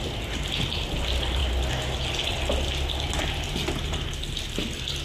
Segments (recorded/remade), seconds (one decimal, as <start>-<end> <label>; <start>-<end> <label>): 0.0-5.0 recorded